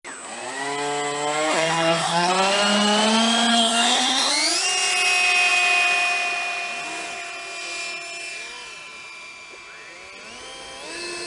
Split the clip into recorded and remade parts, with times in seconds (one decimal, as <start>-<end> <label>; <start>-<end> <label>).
0.0-1.5 recorded; 1.5-2.3 remade; 2.3-3.5 recorded; 3.5-4.3 remade; 4.3-11.3 recorded